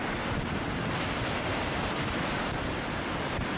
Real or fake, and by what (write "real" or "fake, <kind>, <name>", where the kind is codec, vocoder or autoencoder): real